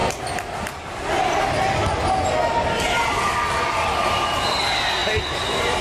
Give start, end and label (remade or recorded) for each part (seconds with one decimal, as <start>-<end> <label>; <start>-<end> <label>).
0.0-5.0 recorded; 5.0-5.8 remade